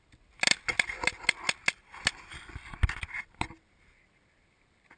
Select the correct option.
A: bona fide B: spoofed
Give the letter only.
A